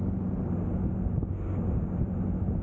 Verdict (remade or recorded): recorded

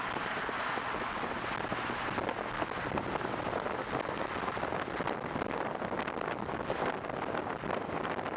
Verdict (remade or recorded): recorded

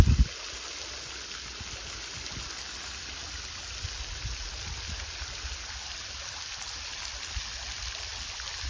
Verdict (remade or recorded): recorded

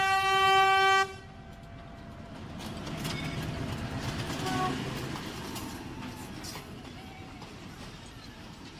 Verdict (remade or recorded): recorded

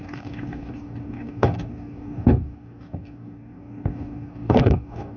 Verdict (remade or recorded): remade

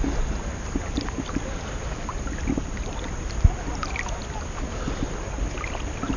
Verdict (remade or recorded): recorded